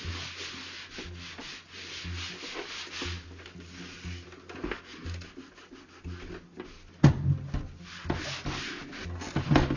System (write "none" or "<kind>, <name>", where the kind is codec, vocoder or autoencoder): none